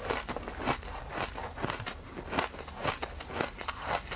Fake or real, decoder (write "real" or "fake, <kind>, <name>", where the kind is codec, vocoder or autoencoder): real